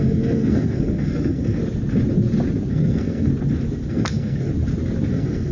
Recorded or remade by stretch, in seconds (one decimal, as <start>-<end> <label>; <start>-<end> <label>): 0.0-1.6 remade; 1.6-2.7 recorded; 2.7-3.3 remade; 3.3-3.9 recorded; 3.9-4.5 remade; 4.5-5.1 recorded; 5.1-5.5 remade